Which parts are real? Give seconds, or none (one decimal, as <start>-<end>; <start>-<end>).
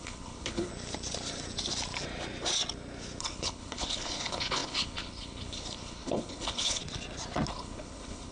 0.7-3.2; 6.8-7.5